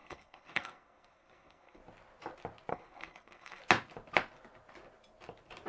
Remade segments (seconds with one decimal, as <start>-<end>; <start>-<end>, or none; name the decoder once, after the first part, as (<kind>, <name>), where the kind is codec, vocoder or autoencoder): 0.0-1.8 (codec, SNAC); 2.7-3.6